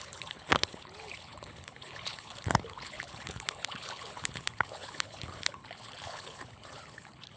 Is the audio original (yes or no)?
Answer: no